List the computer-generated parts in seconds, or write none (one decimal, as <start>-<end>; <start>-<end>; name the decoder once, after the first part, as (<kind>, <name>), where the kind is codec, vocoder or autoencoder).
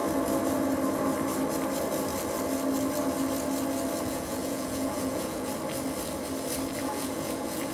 4.0-5.5 (vocoder, Vocos); 6.8-7.7